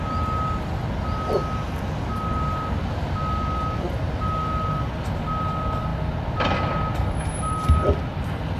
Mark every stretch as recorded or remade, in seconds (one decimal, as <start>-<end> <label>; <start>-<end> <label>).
0.0-8.6 recorded